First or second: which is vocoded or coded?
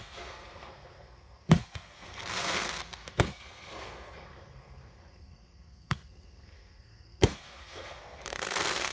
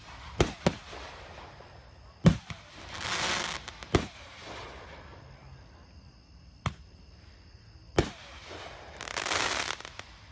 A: first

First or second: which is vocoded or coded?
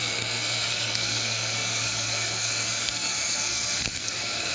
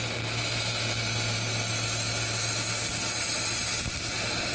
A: first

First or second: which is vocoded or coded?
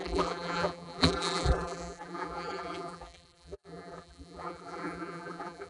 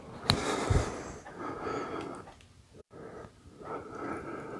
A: first